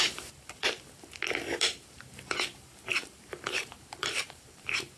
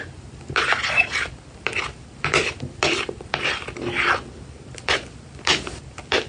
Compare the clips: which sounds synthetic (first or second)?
first